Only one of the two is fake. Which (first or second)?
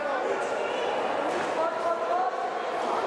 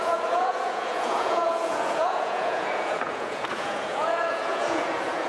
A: second